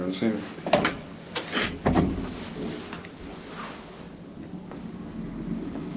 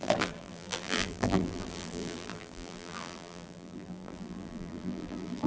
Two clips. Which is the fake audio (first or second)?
second